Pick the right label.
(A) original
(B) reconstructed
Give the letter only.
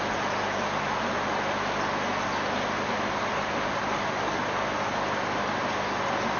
A